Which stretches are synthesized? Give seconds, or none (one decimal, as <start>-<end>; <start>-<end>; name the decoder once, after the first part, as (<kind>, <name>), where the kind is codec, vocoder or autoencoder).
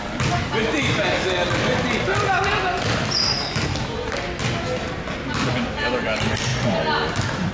none